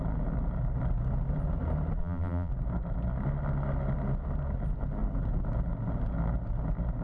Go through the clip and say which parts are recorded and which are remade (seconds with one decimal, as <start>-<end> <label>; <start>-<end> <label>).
0.0-2.0 recorded; 2.0-2.5 remade; 2.5-7.0 recorded